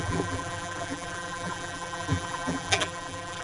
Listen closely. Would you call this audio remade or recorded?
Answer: remade